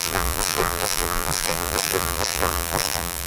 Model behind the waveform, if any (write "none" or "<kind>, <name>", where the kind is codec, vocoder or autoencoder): vocoder, BigVGAN v2